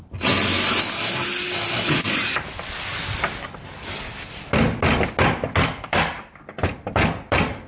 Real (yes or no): yes